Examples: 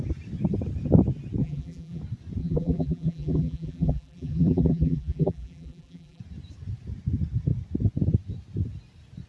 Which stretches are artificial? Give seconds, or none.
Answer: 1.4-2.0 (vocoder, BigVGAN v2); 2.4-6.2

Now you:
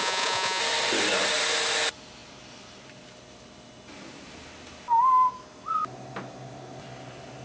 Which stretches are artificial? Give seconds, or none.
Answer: 0.0-0.6 (vocoder, Vocos)